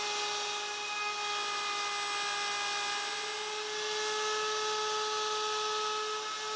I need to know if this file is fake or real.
real